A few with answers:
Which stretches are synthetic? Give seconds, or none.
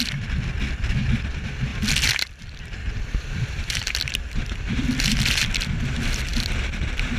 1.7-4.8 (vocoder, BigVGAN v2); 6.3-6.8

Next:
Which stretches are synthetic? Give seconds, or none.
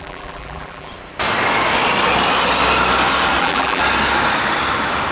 0.0-0.9 (vocoder, BigVGAN v2); 3.4-3.8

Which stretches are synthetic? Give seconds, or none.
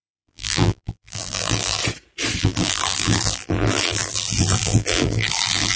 0.0-1.8 (vocoder, BigVGAN v2); 2.4-5.8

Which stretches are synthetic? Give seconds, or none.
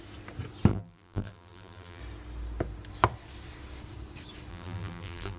0.7-2.0 (vocoder, BigVGAN v2); 4.5-5.4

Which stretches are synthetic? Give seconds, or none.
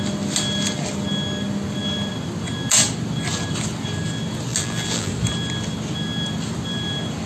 4.5-5.1 (vocoder, BigVGAN v2)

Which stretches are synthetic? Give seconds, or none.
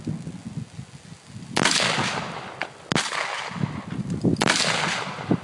none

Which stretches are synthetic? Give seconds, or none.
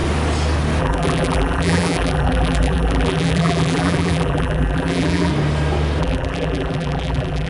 0.8-5.3 (vocoder, BigVGAN v2); 6.0-7.5